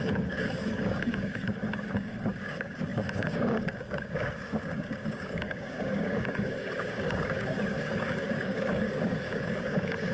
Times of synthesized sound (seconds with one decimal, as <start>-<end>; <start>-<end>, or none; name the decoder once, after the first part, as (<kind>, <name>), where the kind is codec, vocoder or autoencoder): 0.0-10.1 (codec, DAC)